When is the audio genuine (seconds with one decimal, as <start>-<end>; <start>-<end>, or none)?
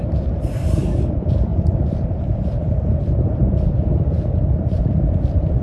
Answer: none